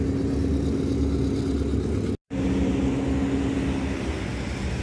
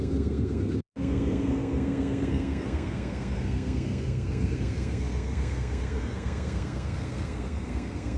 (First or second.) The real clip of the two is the first